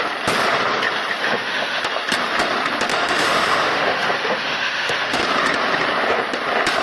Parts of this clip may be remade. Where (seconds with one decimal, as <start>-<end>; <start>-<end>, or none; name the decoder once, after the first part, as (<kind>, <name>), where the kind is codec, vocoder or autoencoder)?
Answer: 1.2-1.8 (autoencoder, DAC-VAE); 2.9-5.2